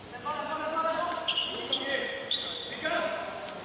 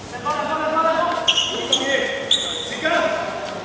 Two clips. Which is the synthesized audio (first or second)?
first